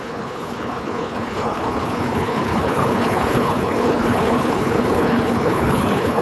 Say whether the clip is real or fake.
fake